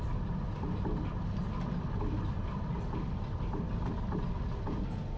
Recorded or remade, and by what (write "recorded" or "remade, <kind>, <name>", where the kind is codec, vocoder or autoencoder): recorded